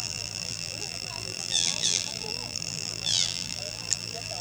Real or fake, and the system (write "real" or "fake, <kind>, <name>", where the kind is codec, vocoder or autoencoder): fake, vocoder, BigVGAN v2